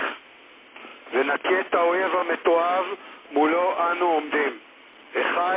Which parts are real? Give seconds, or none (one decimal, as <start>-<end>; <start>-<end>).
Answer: 0.0-5.6